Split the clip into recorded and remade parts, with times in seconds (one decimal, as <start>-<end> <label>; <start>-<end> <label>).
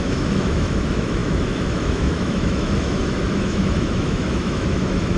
0.0-5.2 remade